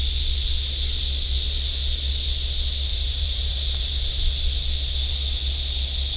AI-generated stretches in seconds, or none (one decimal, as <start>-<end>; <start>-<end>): 2.9-4.2